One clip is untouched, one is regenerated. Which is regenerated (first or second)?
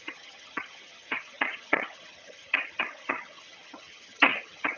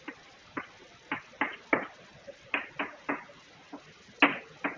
first